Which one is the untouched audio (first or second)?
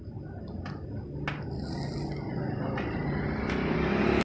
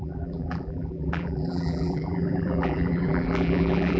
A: first